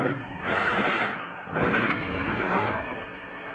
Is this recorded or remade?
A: remade